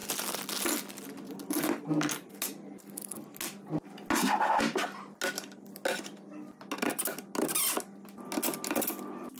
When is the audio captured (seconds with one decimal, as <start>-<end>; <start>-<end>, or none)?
0.0-9.4